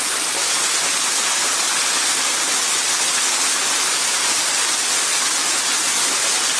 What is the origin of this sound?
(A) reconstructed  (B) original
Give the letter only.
B